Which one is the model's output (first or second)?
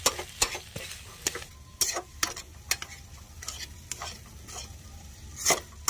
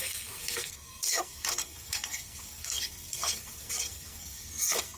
second